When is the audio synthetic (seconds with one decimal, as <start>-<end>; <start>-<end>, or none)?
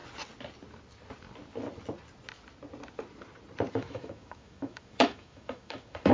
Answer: 3.7-6.1